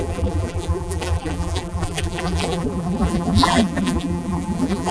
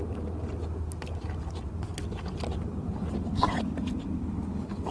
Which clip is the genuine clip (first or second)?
second